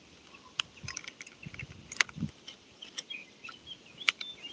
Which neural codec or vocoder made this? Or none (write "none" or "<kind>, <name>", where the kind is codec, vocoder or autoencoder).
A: none